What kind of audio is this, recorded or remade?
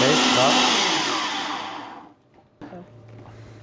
recorded